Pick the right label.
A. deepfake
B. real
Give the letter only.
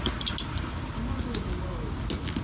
B